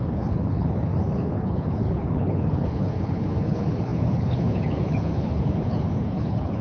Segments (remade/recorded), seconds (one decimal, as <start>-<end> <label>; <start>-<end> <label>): 0.0-6.6 remade